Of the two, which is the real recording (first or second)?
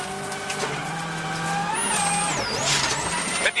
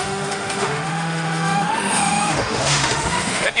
first